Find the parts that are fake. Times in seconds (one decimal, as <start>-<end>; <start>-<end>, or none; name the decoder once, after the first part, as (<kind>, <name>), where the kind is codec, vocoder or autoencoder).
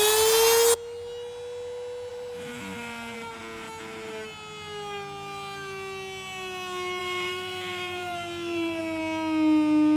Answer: 2.1-3.4 (vocoder, BigVGAN v2); 7.0-8.8